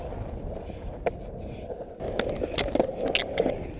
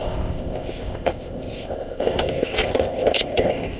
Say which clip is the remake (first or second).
second